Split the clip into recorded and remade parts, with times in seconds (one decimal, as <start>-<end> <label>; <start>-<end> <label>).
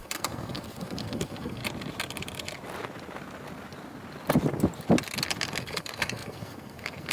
0.0-1.6 remade; 1.6-5.6 recorded; 5.6-7.1 remade